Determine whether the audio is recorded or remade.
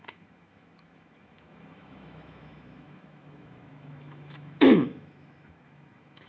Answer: remade